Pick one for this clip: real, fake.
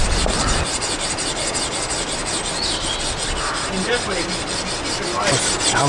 real